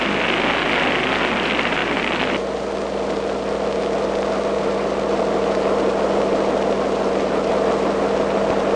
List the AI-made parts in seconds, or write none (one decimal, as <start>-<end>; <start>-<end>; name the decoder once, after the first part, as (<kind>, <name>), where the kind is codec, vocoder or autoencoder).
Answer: none